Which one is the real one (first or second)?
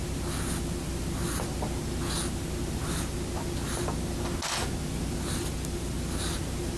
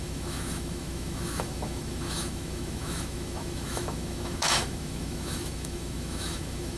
first